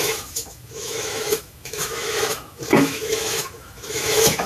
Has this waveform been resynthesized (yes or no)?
yes